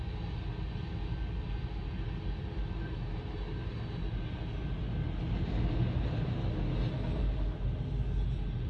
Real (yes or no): yes